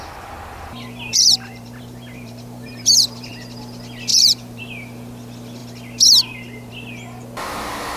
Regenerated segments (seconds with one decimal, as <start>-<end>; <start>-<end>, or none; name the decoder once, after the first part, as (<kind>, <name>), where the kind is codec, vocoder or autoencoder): 1.1-3.3 (vocoder, BigVGAN v2); 4.1-4.6